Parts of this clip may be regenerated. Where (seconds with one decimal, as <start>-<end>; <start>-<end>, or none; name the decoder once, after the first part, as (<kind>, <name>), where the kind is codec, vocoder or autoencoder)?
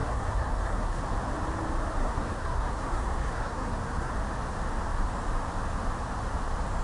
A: 0.0-1.0 (codec, SNAC); 2.0-4.1